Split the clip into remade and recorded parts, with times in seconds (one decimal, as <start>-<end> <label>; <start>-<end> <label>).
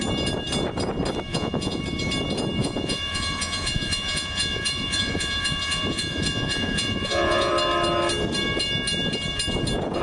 0.0-1.3 recorded; 1.3-1.8 remade; 1.8-2.6 recorded; 2.6-7.5 remade; 7.5-10.0 recorded